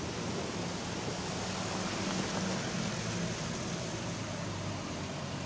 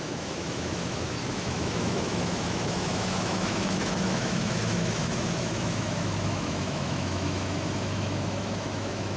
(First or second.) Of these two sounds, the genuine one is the first